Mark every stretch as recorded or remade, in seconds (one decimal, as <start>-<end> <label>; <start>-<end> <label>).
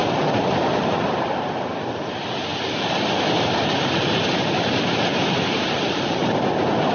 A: 0.0-2.0 remade; 2.0-2.5 recorded; 2.5-6.4 remade; 6.4-6.9 recorded